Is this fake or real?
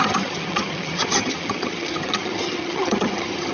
fake